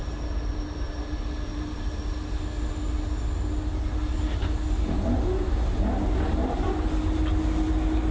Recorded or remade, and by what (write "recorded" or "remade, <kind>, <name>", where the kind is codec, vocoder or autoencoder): recorded